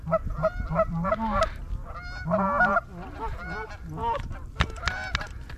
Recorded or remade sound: recorded